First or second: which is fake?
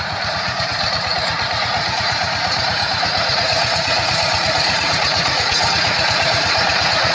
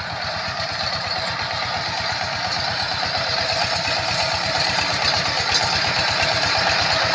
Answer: first